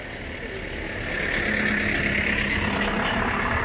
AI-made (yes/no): no